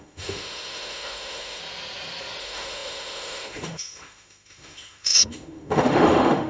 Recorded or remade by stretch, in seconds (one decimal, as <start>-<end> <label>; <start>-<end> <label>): 0.0-1.6 remade; 1.6-2.4 recorded; 2.4-6.5 remade

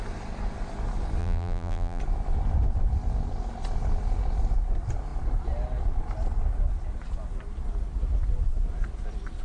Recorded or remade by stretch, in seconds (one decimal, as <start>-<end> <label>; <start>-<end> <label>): 0.0-1.2 recorded; 1.2-2.0 remade; 2.0-9.4 recorded

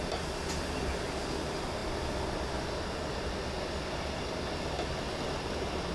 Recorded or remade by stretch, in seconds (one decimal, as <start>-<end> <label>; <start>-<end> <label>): 0.0-5.9 recorded

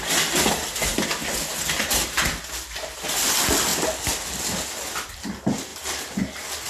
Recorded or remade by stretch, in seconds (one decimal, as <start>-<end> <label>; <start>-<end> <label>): 0.0-6.7 recorded